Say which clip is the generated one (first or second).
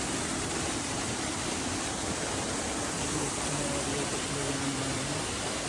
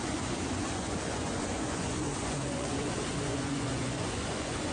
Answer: second